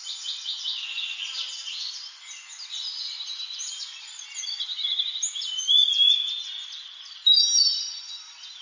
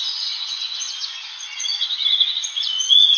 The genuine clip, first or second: first